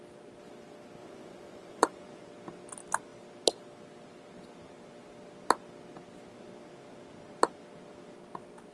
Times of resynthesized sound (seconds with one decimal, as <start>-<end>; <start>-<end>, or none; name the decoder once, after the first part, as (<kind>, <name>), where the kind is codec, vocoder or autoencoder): 1.0-2.3 (vocoder, Vocos)